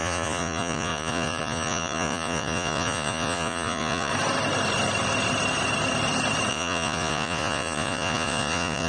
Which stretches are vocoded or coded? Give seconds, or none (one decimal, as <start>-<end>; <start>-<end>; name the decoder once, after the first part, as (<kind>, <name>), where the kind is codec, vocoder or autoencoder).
0.0-4.1 (vocoder, Vocos); 6.5-8.9